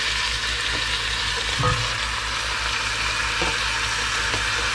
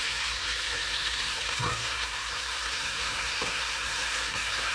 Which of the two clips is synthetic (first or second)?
second